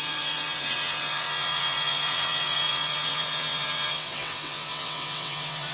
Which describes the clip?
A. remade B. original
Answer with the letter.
A